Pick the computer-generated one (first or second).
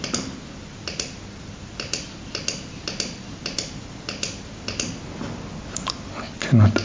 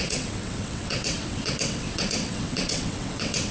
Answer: second